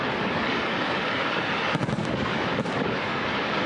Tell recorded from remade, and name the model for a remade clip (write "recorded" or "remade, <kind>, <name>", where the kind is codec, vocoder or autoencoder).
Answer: remade, codec, DAC